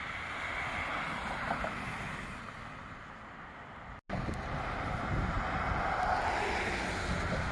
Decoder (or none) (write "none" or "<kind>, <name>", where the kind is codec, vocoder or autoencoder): none